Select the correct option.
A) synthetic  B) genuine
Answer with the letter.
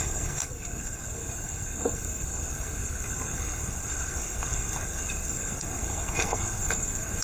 A